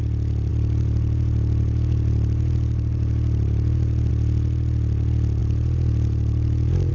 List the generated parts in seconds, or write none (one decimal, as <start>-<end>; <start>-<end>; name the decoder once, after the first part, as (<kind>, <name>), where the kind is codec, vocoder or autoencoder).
0.5-4.1 (vocoder, BigVGAN v2); 5.4-6.9

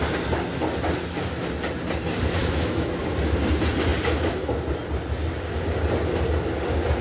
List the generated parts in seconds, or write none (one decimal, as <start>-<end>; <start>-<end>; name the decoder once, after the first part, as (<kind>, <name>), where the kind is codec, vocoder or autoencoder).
2.4-3.0 (autoencoder, DAC-VAE)

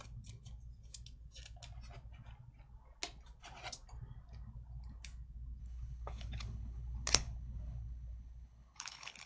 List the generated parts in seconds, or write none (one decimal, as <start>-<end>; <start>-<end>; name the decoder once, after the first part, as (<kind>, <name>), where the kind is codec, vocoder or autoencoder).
5.6-9.3 (codec, HILCodec)

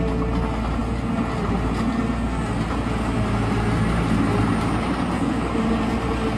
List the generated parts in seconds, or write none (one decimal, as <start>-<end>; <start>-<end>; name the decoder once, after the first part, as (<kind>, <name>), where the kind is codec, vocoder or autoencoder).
none